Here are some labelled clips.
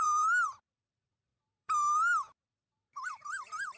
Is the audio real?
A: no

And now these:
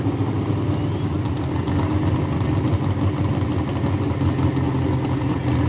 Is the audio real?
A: yes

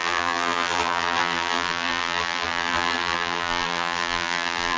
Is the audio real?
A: no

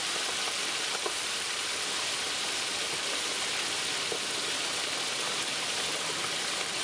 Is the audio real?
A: no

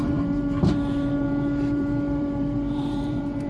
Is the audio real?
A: no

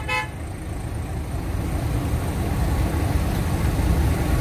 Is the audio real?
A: yes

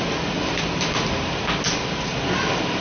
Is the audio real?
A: yes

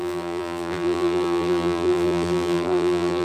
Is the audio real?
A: no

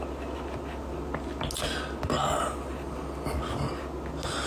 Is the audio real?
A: yes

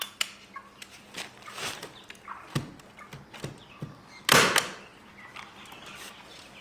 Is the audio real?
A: yes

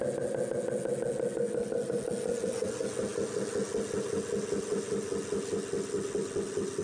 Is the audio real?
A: yes